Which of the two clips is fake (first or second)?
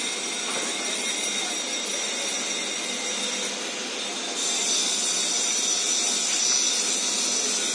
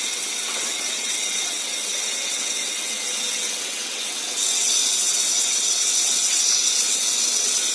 second